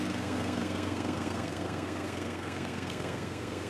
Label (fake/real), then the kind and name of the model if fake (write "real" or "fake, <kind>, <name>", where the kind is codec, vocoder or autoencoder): fake, codec, SNAC